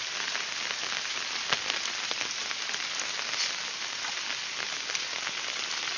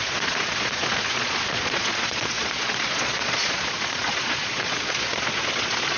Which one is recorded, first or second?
first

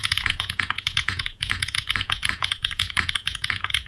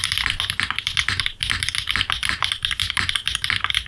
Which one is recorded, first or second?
second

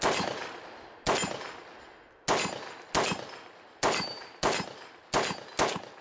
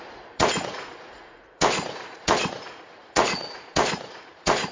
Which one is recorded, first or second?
first